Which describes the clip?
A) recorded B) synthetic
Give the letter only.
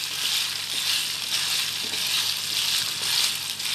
A